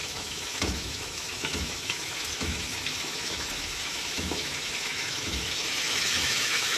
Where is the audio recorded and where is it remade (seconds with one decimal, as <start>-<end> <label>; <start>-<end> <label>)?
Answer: 0.0-6.8 remade